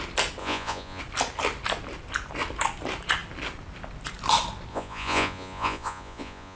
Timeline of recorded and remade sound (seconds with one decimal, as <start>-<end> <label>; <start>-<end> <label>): 0.0-0.4 recorded; 0.4-1.0 remade; 1.0-4.7 recorded; 4.7-6.6 remade